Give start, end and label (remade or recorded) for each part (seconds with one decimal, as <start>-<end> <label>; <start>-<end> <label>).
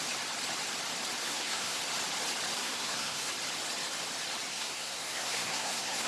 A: 0.0-1.2 recorded; 1.2-1.8 remade; 1.8-2.6 recorded; 2.6-3.3 remade; 3.3-4.5 recorded; 4.5-6.1 remade